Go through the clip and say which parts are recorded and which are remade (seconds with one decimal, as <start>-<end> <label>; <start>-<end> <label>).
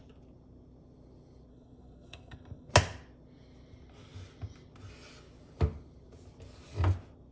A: 0.0-1.5 recorded; 1.5-2.7 remade; 2.7-7.3 recorded